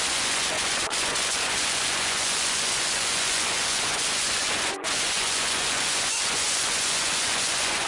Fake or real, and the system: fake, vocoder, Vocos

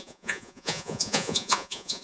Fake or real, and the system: fake, vocoder, Vocos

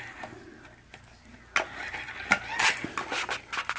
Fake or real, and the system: real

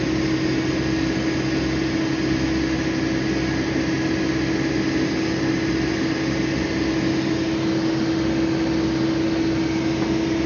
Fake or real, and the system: real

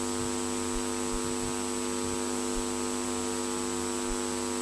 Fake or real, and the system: real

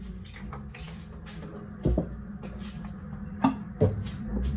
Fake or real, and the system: real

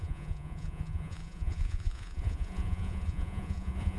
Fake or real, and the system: fake, vocoder, Vocos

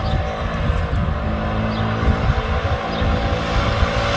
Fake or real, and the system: real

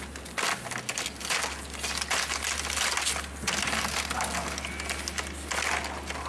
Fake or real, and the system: real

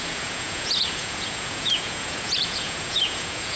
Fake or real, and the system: fake, vocoder, Vocos